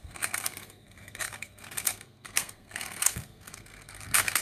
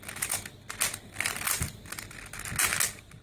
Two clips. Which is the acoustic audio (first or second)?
second